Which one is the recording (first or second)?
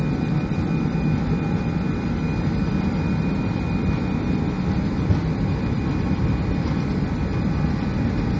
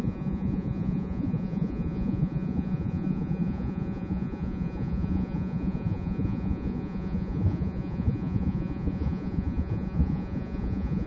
first